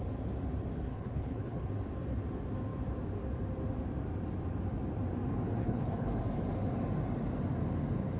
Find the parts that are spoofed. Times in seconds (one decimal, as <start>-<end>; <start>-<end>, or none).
0.9-1.7; 5.6-6.2